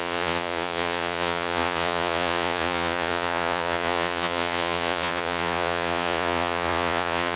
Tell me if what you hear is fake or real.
fake